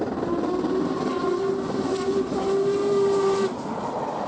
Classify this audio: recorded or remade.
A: recorded